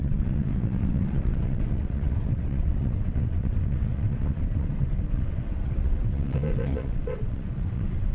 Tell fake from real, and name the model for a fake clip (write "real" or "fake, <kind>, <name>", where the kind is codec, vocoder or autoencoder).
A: fake, vocoder, WaveNeXt